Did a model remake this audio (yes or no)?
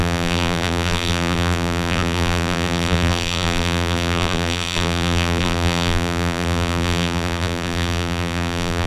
yes